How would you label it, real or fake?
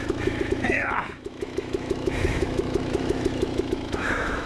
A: fake